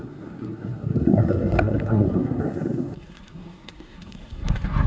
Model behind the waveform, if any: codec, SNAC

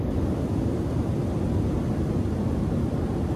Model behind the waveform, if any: none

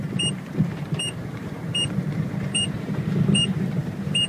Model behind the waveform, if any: vocoder, BigVGAN v2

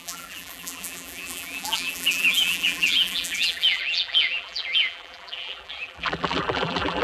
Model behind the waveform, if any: vocoder, BigVGAN v2